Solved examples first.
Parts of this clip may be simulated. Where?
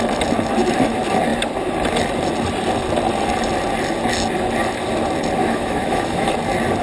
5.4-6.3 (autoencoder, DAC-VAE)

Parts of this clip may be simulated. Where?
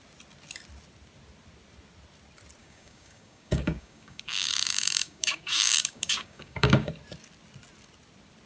2.6-6.9 (codec, DAC)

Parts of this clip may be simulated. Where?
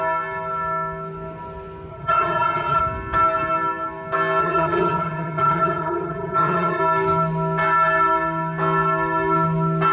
1.9-2.8 (vocoder, HiFi-GAN); 4.4-6.8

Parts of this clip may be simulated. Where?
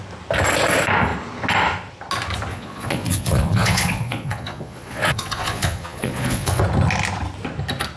2.5-6.6 (vocoder, Vocos)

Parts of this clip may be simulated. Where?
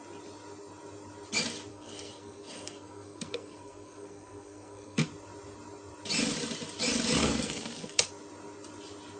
1.7-5.1 (codec, SNAC); 7.2-8.1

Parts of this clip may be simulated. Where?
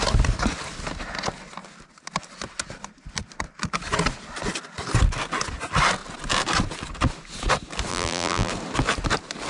7.9-8.5 (vocoder, BigVGAN v2)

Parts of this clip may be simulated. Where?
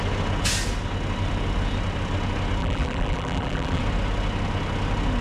2.6-3.8 (vocoder, BigVGAN v2)